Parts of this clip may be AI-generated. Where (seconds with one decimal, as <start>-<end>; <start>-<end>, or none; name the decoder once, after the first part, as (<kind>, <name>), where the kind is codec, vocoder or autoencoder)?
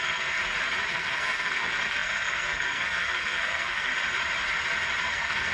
0.0-0.4 (codec, SNAC); 0.9-3.9; 5.1-5.5